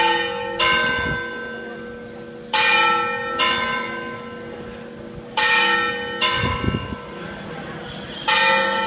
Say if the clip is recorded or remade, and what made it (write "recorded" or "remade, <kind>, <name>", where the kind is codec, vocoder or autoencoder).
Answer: recorded